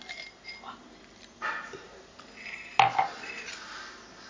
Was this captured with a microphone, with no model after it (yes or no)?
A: yes